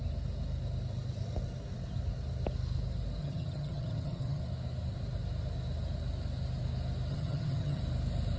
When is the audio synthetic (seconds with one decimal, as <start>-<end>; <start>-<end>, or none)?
3.2-4.4; 7.1-7.8